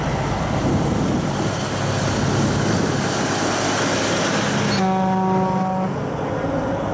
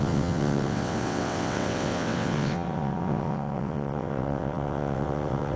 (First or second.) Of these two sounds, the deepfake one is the second